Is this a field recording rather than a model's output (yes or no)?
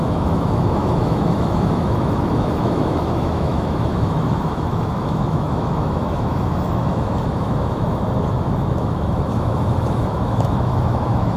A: no